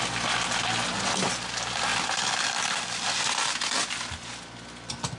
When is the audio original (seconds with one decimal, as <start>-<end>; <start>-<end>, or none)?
0.0-1.9; 4.0-5.2